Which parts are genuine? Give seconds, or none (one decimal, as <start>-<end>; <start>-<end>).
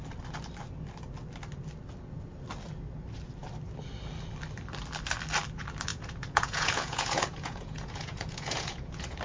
0.0-5.9